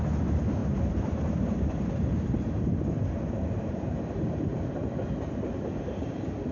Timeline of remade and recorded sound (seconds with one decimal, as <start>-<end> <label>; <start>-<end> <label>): 0.0-4.8 remade; 4.8-5.5 recorded; 5.5-6.5 remade